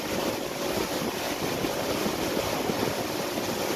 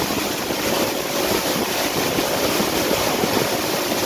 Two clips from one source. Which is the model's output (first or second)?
second